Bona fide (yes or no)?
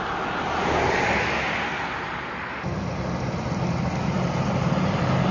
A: yes